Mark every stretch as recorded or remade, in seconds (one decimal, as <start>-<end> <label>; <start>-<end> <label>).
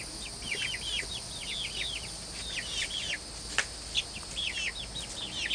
0.0-5.5 recorded